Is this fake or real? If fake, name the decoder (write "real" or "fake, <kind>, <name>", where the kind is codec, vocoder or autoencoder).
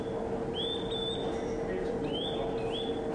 real